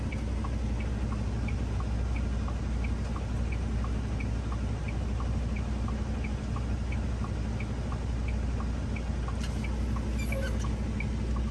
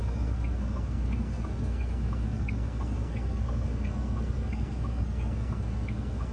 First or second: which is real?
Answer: first